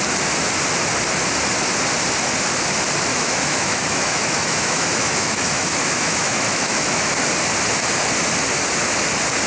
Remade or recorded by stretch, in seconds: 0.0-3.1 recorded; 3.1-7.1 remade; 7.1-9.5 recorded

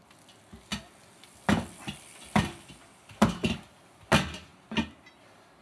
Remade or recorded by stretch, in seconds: 0.0-5.6 recorded